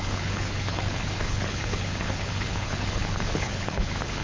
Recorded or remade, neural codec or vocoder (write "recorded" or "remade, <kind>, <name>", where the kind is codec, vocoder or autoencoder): remade, codec, HILCodec